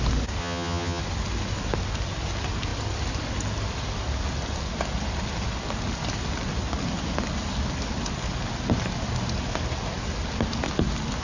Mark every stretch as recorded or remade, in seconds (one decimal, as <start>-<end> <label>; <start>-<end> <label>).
0.0-0.4 recorded; 0.4-1.0 remade; 1.0-11.2 recorded